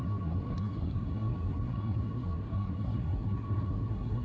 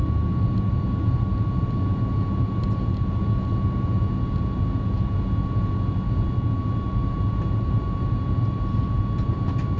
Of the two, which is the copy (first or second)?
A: first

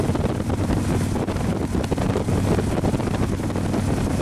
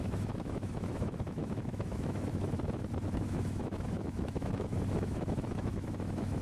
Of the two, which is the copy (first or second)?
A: second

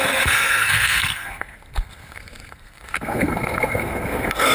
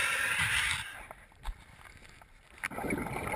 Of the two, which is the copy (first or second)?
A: first